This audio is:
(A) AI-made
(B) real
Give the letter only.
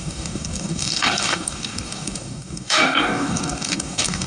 A